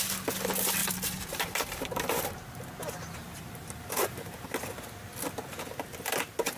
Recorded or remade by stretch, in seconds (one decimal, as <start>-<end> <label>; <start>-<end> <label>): 0.0-0.8 recorded; 0.8-4.8 remade; 4.8-6.6 recorded